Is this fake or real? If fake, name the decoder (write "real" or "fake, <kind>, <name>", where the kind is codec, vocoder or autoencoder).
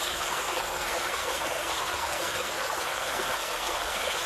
fake, codec, SNAC